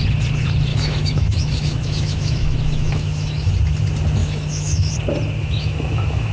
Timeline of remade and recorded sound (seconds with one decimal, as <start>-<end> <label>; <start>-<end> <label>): 0.0-0.7 recorded; 0.7-3.5 remade; 3.5-4.2 recorded; 4.2-4.9 remade; 4.9-5.4 recorded; 5.4-6.3 remade